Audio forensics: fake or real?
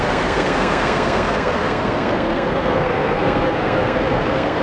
fake